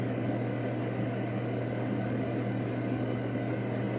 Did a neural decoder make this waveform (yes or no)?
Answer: yes